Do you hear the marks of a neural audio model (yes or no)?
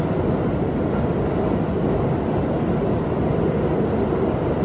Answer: no